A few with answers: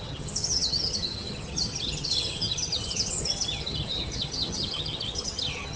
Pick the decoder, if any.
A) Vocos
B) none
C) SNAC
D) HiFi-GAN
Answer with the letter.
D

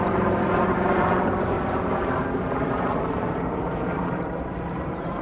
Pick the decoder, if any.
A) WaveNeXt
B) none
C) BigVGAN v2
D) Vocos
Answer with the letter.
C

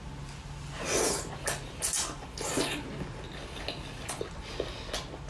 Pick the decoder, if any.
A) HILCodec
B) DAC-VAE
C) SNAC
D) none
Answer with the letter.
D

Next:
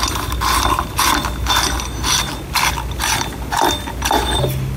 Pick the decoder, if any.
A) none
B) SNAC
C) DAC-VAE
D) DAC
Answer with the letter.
A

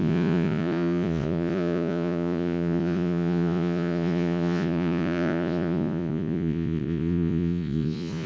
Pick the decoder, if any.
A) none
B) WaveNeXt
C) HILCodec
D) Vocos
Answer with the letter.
D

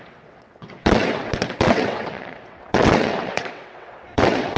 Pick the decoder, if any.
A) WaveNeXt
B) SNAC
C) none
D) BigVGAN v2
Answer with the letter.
A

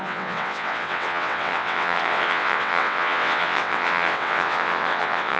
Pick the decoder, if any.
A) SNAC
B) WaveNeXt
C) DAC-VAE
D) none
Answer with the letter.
B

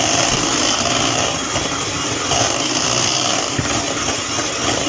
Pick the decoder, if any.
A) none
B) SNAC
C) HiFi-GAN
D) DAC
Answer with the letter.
A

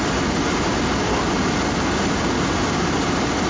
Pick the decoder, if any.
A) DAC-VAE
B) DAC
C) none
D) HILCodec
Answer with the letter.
C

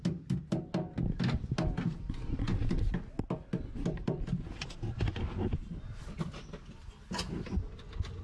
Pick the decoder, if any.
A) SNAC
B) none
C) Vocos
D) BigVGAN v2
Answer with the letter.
B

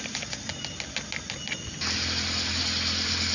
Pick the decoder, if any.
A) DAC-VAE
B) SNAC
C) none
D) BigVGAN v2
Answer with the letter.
C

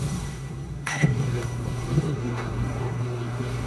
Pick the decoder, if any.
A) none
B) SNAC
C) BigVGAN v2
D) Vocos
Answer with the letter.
B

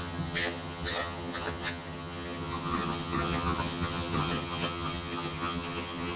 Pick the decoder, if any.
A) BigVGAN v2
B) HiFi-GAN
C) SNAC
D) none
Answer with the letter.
B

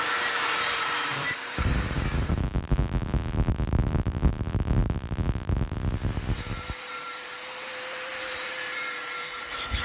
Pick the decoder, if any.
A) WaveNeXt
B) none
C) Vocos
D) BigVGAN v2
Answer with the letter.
D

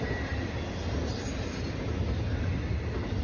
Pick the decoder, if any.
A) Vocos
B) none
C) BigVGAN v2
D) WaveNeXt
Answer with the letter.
B